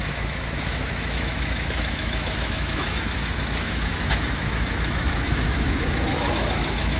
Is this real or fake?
fake